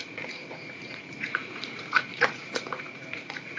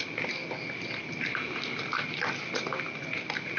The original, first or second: second